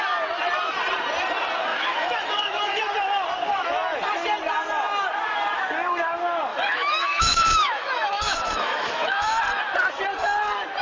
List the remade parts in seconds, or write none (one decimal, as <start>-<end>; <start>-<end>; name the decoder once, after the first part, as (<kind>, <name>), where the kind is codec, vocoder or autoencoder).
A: 1.7-2.8 (autoencoder, DAC-VAE); 6.5-9.4